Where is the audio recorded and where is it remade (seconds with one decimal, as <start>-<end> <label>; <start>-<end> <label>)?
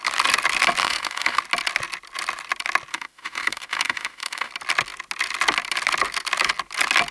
0.0-0.8 recorded; 0.8-1.4 remade; 1.4-2.9 recorded; 2.9-4.5 remade; 4.5-7.1 recorded